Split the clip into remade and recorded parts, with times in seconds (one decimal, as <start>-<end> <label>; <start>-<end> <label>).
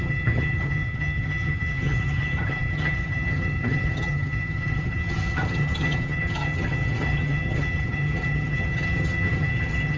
0.0-10.0 remade